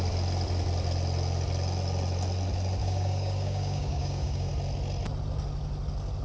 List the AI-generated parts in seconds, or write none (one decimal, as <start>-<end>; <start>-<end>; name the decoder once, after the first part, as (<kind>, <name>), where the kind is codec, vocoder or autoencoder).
2.8-4.5 (codec, DAC)